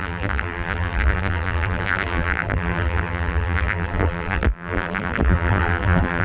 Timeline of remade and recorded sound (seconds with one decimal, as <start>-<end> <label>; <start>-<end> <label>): 0.0-6.2 remade